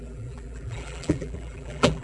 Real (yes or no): no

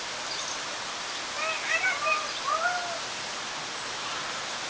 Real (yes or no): no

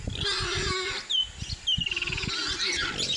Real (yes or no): yes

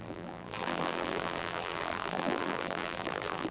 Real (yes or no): no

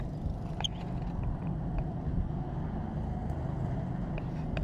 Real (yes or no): yes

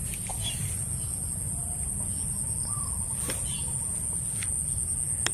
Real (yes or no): yes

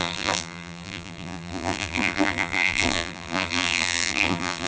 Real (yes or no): no